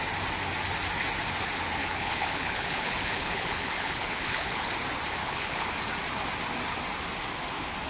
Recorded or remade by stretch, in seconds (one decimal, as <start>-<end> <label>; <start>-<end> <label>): 0.0-1.8 recorded; 1.8-4.7 remade; 4.7-5.2 recorded; 5.2-5.7 remade; 5.7-7.9 recorded